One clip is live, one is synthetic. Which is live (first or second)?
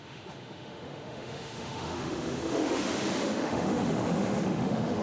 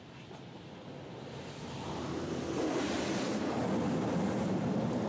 second